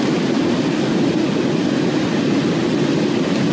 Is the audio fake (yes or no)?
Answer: no